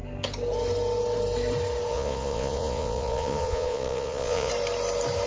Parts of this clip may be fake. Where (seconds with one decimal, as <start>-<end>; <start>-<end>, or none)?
1.9-4.5